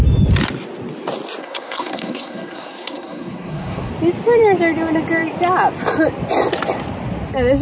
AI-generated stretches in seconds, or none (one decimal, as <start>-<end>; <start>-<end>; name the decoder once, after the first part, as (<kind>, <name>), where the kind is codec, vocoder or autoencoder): 1.4-3.9 (codec, SNAC)